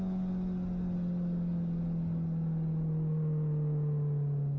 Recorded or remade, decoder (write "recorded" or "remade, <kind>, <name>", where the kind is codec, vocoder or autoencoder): recorded